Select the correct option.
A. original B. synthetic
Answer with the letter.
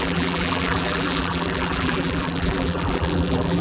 B